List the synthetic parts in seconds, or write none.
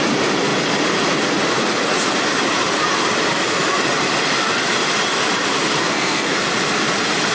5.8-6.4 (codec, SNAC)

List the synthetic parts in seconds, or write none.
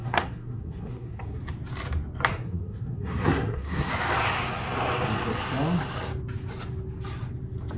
0.0-1.4 (codec, SNAC); 2.3-3.9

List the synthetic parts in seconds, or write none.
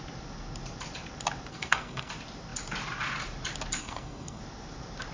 1.5-2.1 (codec, SNAC); 3.8-4.4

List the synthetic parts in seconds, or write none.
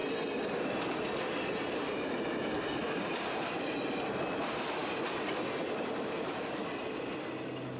none